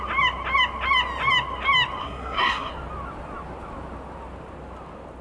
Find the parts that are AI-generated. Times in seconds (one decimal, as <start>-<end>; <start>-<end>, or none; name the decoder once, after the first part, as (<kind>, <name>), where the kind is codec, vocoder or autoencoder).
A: 2.0-2.7 (codec, SNAC)